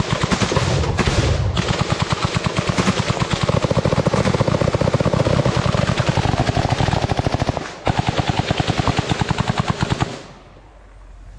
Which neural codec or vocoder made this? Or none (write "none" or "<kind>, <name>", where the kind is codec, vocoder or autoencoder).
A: none